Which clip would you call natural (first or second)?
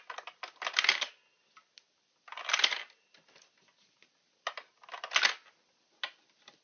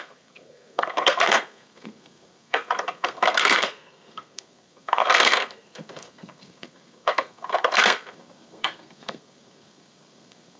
first